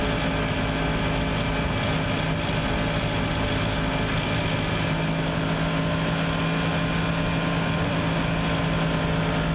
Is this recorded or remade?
recorded